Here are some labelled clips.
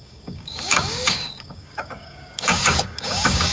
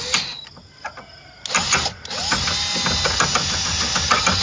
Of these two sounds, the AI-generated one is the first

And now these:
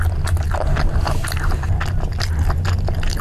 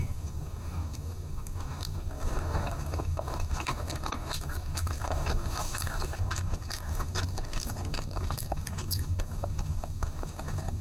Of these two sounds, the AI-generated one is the second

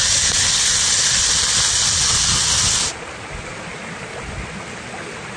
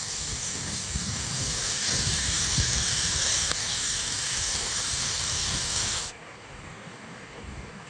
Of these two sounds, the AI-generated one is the second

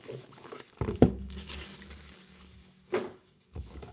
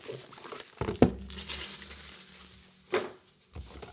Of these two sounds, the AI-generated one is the first